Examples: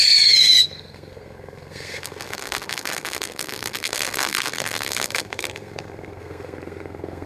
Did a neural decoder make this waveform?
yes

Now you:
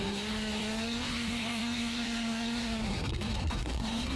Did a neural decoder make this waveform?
yes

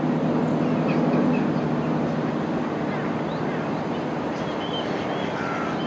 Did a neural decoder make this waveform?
no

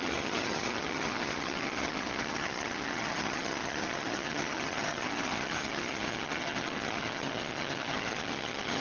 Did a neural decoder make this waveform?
yes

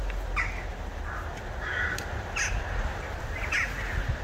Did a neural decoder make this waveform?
no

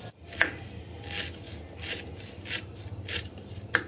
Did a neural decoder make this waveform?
yes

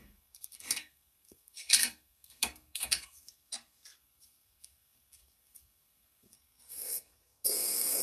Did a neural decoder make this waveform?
yes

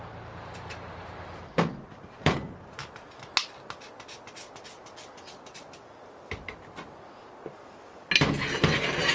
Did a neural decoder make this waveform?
no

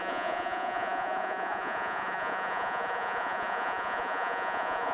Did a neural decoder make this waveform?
yes